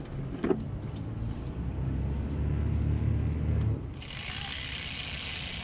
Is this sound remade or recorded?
recorded